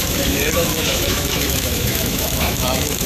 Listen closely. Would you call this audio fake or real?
fake